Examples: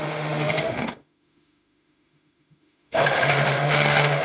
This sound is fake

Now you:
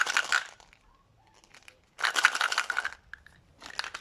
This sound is real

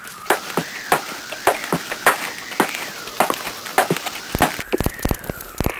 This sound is real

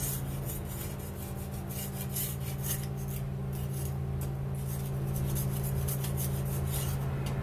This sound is real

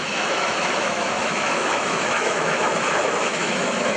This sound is fake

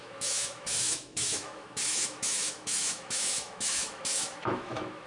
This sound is fake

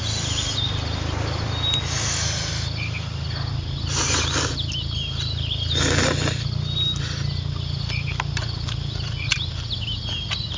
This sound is real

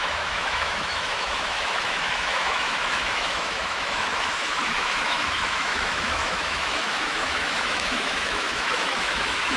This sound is fake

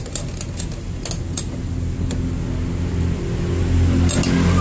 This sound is real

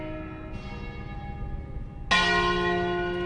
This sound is real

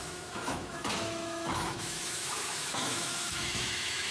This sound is fake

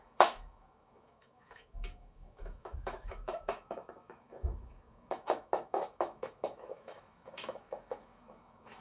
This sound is fake